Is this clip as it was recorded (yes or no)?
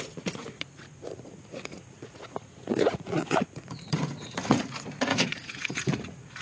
no